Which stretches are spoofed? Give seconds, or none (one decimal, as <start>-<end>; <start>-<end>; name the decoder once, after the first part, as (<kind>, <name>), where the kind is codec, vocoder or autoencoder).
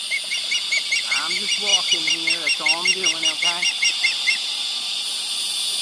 none